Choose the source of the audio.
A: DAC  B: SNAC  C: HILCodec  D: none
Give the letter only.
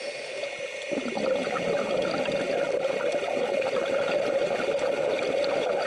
D